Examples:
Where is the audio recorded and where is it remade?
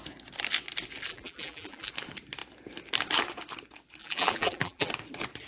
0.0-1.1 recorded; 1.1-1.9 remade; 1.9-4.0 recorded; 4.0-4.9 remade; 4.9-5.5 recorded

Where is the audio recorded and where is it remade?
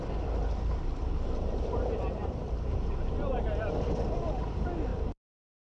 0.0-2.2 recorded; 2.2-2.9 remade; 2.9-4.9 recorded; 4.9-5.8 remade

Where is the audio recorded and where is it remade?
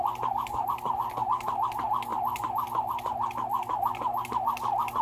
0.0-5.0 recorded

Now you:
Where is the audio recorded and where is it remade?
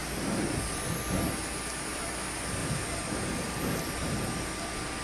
0.0-2.6 recorded; 2.6-4.6 remade; 4.6-5.0 recorded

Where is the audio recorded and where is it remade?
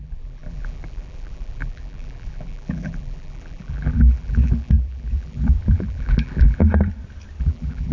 0.0-6.6 remade; 6.6-7.4 recorded; 7.4-7.9 remade